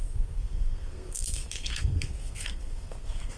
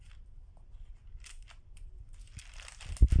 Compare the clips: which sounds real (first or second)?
second